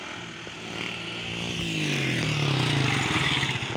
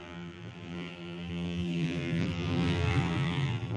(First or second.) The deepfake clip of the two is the second